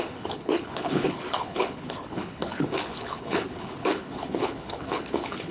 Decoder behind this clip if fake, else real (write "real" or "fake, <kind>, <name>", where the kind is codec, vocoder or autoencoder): fake, codec, HILCodec